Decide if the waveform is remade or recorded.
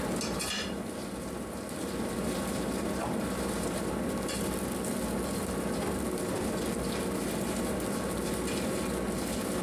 remade